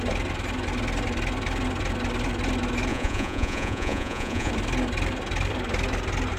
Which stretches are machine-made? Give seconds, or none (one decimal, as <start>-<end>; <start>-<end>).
2.9-4.5